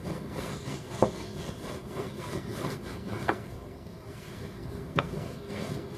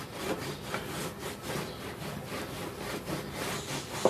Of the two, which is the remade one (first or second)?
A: first